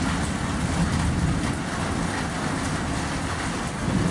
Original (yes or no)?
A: yes